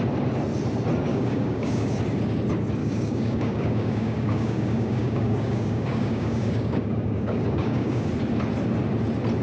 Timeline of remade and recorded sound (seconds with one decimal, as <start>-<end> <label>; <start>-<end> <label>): 0.0-1.1 recorded; 1.1-2.0 remade; 2.0-2.8 recorded; 2.8-8.1 remade; 8.1-9.4 recorded

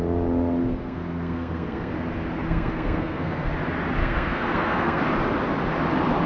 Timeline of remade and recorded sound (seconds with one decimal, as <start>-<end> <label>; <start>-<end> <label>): 0.0-0.7 recorded; 0.7-1.9 remade; 1.9-2.4 recorded; 2.4-3.5 remade; 3.5-4.0 recorded; 4.0-5.0 remade; 5.0-6.3 recorded

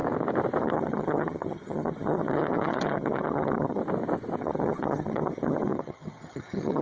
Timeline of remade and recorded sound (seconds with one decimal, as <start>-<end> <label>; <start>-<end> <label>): 0.0-0.6 recorded; 0.6-3.8 remade; 3.8-4.4 recorded; 4.4-6.8 remade

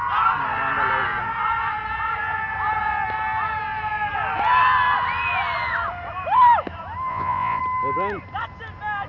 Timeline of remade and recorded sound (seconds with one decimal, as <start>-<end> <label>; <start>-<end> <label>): 0.0-7.1 recorded; 7.1-7.6 remade; 7.6-9.1 recorded

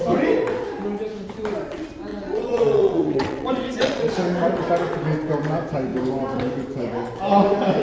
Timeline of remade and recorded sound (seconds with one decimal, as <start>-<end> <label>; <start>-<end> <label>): 0.0-2.1 recorded; 2.1-4.1 remade; 4.1-7.8 recorded

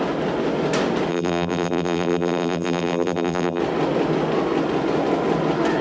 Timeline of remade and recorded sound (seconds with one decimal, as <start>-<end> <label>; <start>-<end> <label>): 0.0-1.1 recorded; 1.1-3.6 remade; 3.6-5.8 recorded

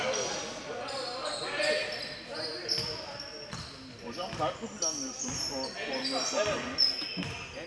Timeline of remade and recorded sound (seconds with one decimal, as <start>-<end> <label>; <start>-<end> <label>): 0.0-7.7 recorded

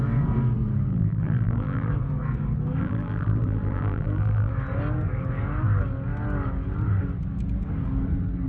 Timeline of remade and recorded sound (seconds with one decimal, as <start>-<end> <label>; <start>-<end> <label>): 0.0-0.9 recorded; 0.9-1.9 remade; 1.9-2.8 recorded; 2.8-4.5 remade; 4.5-8.5 recorded